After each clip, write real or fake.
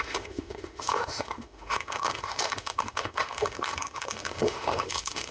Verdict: fake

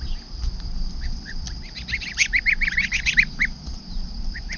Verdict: real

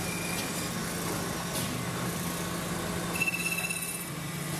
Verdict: real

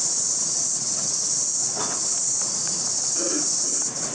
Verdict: fake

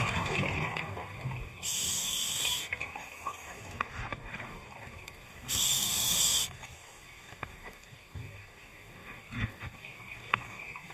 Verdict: fake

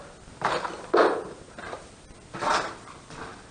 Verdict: real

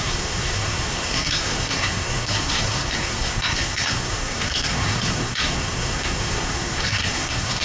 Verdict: fake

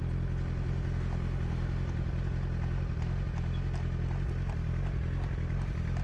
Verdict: real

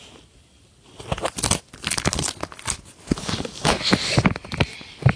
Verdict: real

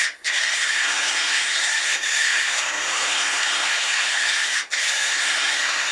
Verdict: fake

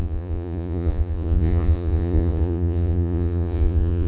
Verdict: fake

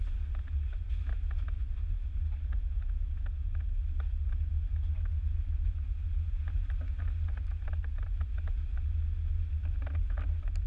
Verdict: real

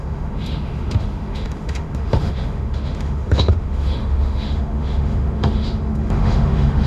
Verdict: fake